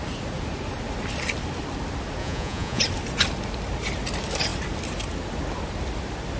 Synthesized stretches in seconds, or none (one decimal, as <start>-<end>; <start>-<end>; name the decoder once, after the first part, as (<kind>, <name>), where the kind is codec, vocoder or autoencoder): 2.2-2.8 (vocoder, Vocos)